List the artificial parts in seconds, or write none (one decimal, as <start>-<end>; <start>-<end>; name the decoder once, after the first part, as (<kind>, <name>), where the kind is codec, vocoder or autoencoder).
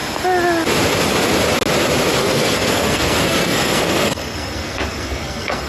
2.2-5.7 (codec, SNAC)